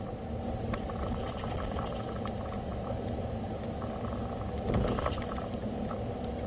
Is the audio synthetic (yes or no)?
no